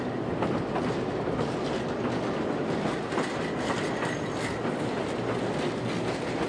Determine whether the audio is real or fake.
real